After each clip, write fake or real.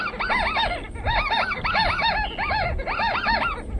real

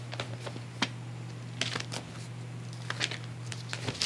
real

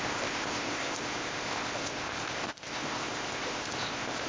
fake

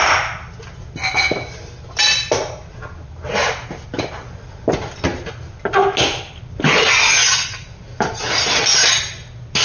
real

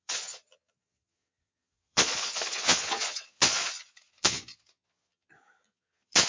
fake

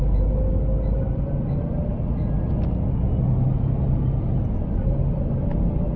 real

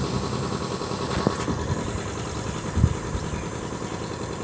real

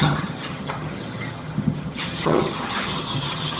fake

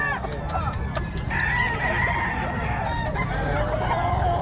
real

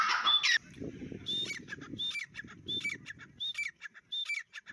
real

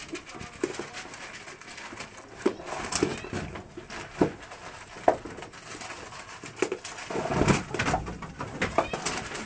real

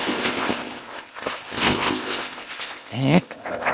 fake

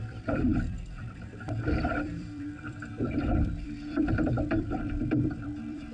fake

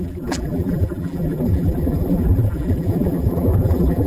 fake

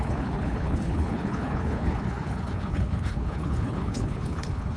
fake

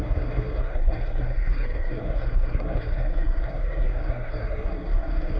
fake